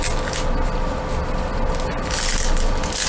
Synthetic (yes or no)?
no